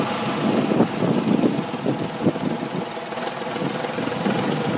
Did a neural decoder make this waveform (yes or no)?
no